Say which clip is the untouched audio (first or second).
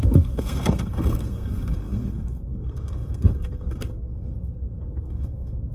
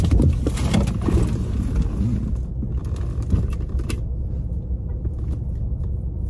second